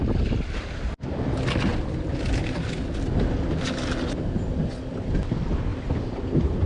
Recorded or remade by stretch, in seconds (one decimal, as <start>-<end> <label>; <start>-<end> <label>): 0.0-6.7 recorded